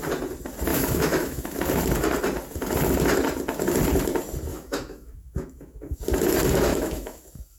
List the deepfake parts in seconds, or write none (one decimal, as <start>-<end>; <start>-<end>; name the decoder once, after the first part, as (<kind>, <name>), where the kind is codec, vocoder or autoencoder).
0.7-1.6 (autoencoder, DAC-VAE); 4.5-6.0; 6.7-7.6